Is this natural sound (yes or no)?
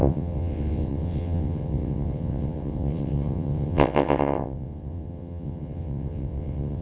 no